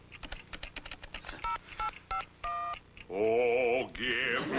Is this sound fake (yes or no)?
no